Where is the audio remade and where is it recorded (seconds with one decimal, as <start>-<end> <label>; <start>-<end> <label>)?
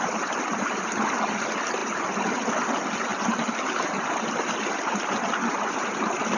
0.0-3.1 recorded; 3.1-3.9 remade; 3.9-6.4 recorded